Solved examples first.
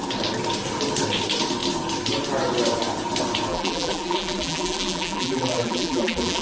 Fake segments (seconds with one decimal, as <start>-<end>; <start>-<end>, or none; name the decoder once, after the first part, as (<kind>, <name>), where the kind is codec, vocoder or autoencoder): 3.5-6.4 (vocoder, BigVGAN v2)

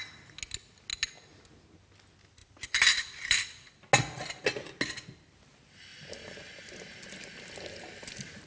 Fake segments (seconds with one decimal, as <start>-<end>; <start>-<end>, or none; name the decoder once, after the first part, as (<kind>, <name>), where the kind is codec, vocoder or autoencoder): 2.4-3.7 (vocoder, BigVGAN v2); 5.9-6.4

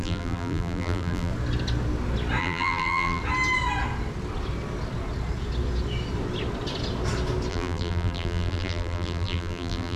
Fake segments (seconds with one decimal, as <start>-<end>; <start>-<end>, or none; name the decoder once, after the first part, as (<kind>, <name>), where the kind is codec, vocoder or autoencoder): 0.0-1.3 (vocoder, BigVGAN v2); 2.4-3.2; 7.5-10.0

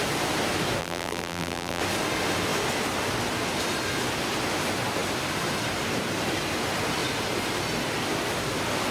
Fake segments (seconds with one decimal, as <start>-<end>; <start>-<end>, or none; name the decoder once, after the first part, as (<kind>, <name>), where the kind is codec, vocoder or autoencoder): 0.8-1.8 (vocoder, BigVGAN v2)